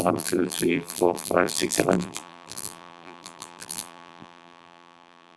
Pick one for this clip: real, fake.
fake